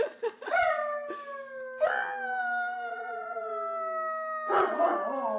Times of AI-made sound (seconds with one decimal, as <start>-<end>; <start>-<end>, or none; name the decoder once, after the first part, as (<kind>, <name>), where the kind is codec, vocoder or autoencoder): 0.0-0.8 (vocoder, Vocos); 2.9-3.5